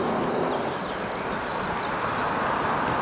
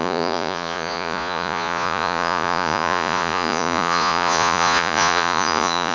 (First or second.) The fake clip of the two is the second